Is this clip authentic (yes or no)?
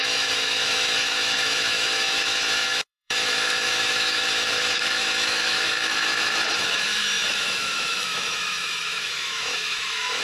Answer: no